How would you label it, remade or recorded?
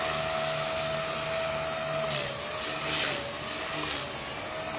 recorded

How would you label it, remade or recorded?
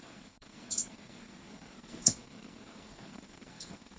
remade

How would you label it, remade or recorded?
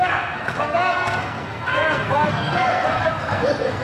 remade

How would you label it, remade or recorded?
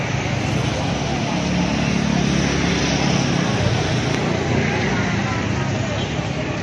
recorded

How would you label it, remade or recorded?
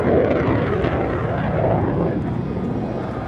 recorded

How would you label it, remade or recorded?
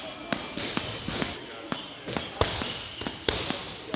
recorded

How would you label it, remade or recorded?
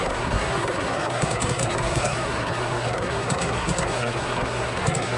remade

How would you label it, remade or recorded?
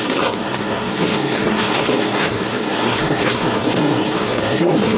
remade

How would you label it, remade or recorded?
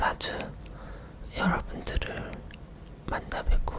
recorded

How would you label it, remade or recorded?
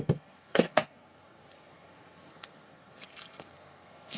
remade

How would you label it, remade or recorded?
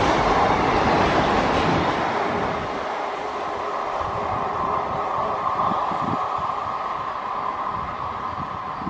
recorded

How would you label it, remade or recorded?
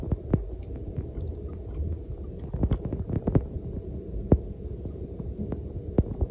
recorded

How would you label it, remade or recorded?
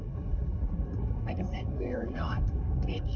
remade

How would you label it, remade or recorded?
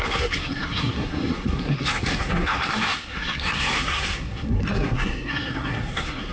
remade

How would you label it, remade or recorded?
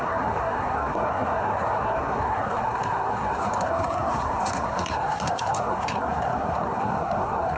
remade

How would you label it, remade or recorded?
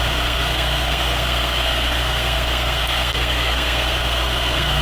remade